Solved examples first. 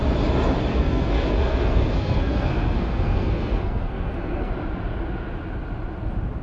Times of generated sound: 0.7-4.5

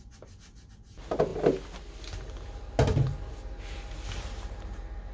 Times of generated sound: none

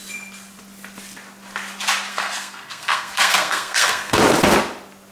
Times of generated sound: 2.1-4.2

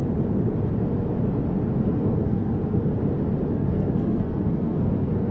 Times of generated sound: 1.9-2.9; 3.5-5.3

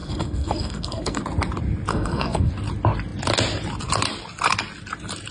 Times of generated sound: 0.0-1.2; 1.9-2.5